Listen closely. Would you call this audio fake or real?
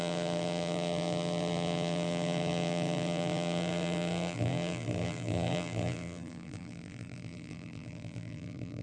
fake